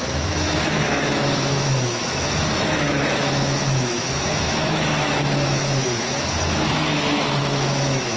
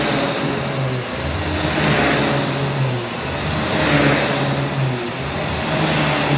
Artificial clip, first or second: first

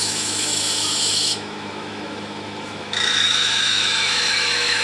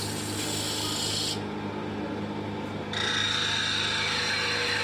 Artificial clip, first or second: first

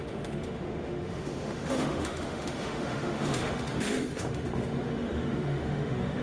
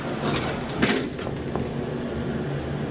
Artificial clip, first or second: first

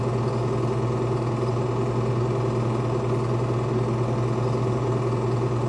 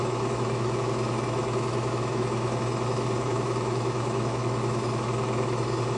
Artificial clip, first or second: second